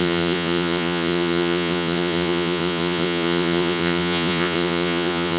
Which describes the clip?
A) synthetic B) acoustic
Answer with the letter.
A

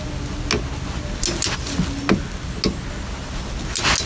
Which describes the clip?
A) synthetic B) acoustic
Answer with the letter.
B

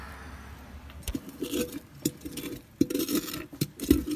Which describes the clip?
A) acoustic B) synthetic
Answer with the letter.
A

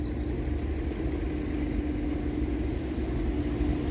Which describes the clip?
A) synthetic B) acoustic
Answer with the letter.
B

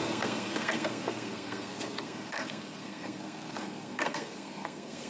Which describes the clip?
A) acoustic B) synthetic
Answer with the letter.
B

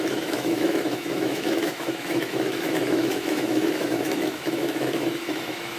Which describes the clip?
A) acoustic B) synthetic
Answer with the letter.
B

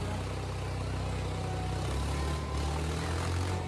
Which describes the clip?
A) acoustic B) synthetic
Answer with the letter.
A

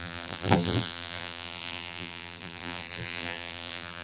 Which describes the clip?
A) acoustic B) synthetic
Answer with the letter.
B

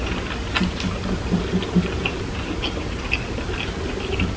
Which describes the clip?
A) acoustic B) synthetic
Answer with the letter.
A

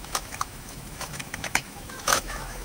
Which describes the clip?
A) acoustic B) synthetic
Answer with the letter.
B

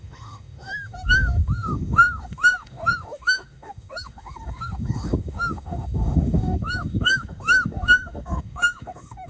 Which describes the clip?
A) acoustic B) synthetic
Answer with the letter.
B